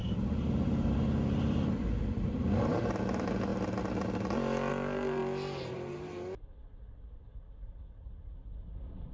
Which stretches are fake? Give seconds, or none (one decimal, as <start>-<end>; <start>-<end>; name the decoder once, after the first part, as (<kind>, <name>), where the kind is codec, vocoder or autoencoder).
0.0-3.5 (vocoder, BigVGAN v2); 4.7-5.2; 7.2-9.1